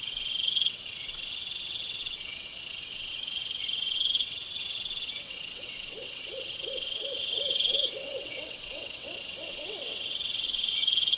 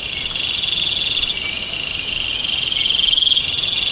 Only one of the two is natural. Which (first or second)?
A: second